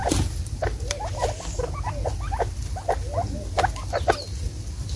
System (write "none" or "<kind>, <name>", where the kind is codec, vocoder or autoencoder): none